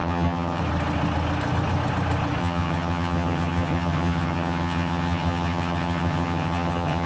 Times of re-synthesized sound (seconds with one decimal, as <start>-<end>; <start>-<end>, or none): 0.0-0.6; 2.4-7.1